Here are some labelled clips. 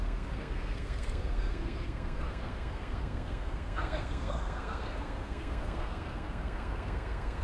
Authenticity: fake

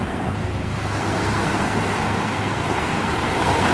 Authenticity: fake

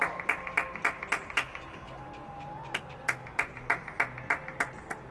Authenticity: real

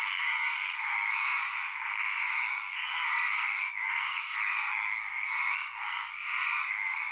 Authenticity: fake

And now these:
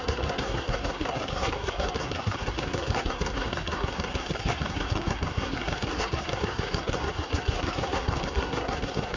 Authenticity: fake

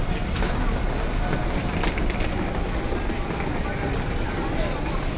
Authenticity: real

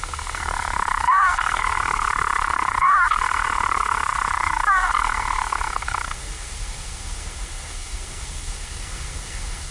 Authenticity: fake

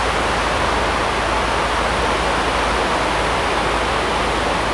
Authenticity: real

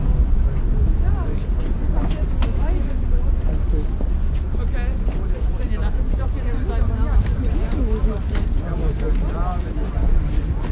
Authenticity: real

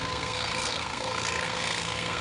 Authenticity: fake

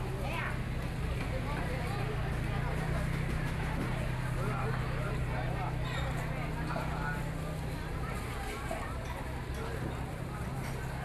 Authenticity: real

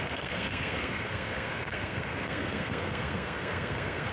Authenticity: fake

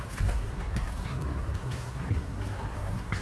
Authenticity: fake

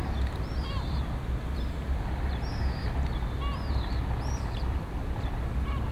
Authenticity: real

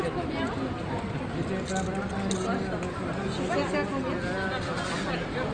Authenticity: real